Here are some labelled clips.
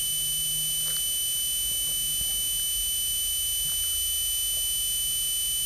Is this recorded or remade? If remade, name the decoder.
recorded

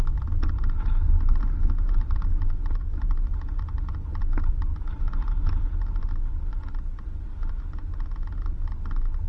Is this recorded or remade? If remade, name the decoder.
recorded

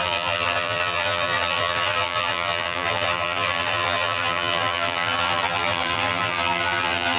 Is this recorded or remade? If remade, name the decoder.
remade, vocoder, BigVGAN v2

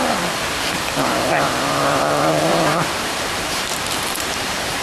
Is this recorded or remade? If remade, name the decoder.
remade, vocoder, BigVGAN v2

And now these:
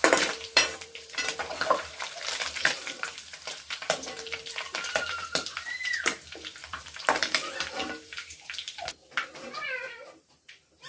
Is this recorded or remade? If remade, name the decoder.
remade, vocoder, BigVGAN v2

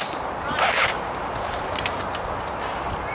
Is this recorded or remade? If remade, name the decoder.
recorded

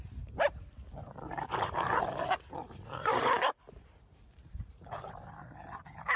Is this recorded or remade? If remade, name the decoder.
remade, vocoder, BigVGAN v2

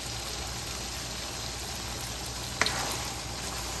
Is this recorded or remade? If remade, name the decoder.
recorded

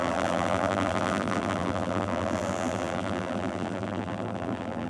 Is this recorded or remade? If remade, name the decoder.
remade, vocoder, BigVGAN v2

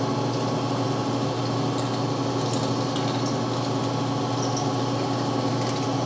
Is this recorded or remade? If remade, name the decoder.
recorded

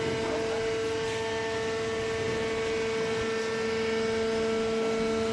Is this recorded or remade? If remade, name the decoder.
recorded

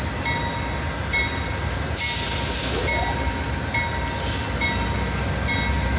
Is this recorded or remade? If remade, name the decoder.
recorded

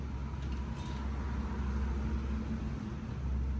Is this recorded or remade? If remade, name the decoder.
recorded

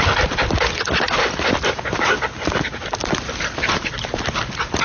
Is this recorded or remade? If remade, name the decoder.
remade, vocoder, BigVGAN v2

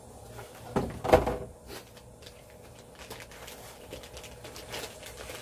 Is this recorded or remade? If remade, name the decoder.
recorded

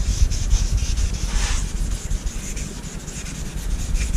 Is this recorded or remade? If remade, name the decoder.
recorded